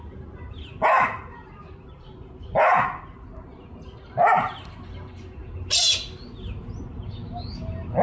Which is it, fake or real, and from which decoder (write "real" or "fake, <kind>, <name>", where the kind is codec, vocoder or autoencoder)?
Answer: real